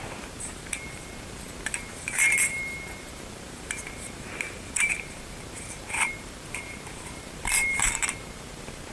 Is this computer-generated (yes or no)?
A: yes